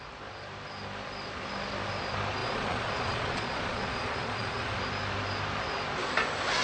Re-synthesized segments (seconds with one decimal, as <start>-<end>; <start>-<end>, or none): 2.4-4.8

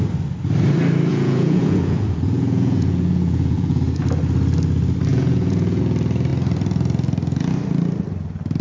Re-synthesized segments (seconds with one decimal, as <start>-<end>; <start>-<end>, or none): 1.1-3.8; 5.1-5.8

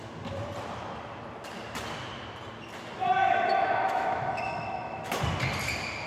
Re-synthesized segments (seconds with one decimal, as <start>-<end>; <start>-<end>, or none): 3.2-5.2